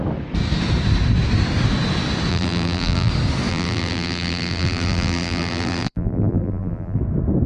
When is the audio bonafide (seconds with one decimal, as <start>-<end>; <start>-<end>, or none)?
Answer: 0.0-2.3; 3.1-3.5; 7.0-7.5